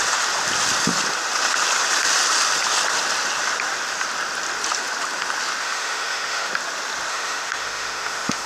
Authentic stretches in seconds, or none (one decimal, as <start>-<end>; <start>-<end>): 0.0-5.6; 6.5-7.1

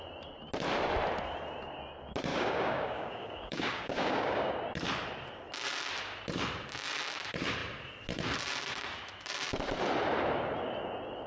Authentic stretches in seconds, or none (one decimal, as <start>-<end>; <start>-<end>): 0.0-2.3; 4.5-11.3

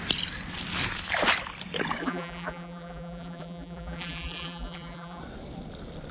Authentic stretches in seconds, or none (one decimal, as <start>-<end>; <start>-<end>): 0.0-2.0; 5.2-6.1

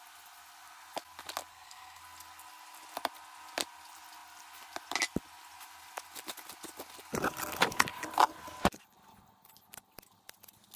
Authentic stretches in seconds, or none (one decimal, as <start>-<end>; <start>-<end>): 0.0-1.5; 2.0-10.8

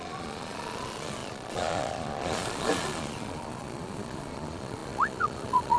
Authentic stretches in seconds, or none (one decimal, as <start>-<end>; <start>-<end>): none